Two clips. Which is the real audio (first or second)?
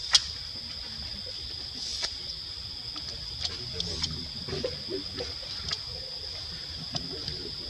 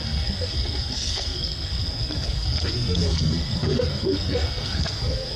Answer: first